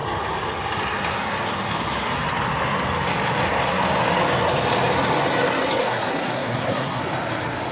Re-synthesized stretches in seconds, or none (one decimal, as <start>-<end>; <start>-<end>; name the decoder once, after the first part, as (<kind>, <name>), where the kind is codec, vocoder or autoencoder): 5.8-7.0 (codec, SNAC)